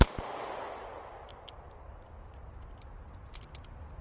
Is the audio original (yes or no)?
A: yes